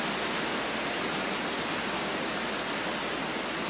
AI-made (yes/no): no